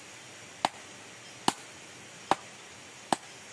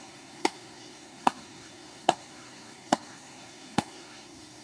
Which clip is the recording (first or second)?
first